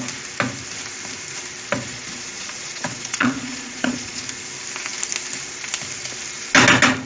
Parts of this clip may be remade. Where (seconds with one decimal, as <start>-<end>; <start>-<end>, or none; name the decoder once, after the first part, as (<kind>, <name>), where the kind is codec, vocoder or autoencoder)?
1.9-4.2 (vocoder, Vocos)